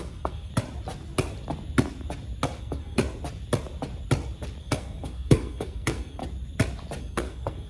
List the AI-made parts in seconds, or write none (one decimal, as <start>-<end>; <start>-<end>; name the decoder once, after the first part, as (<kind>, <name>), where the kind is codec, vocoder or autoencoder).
0.0-0.5 (codec, SNAC); 2.6-3.0; 4.6-6.2; 7.0-7.7